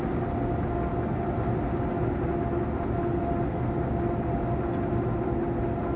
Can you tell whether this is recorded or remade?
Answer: recorded